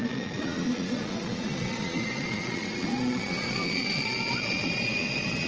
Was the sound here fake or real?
fake